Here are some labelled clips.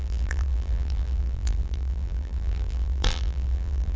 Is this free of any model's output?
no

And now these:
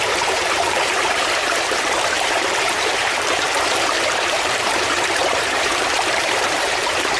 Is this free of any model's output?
no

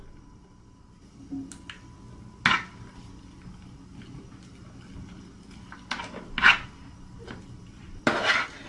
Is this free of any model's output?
yes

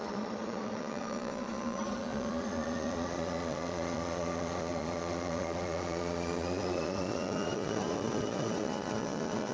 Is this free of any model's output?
no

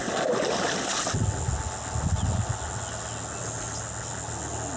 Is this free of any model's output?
yes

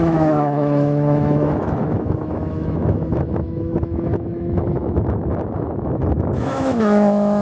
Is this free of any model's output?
no